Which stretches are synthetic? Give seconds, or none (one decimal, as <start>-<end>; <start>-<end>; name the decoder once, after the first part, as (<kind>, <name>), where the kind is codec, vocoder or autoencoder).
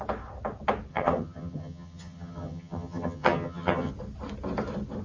0.9-3.9 (vocoder, HiFi-GAN)